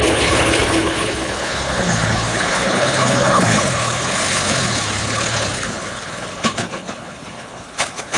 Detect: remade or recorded remade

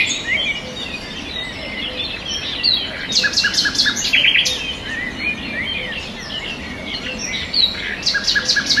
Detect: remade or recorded recorded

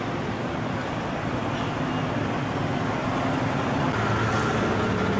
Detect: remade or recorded recorded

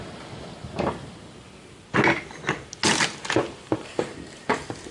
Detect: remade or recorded recorded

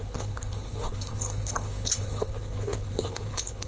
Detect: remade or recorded remade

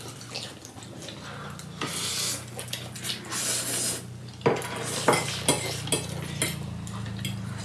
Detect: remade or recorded recorded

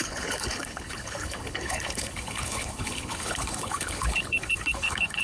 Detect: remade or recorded remade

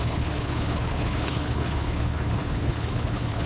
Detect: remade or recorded remade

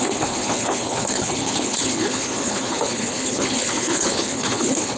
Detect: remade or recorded remade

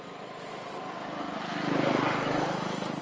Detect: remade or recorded recorded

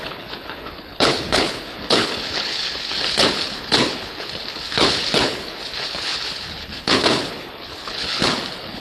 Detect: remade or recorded remade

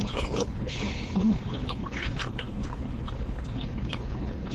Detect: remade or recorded remade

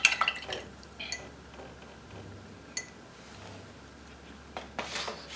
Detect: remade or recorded recorded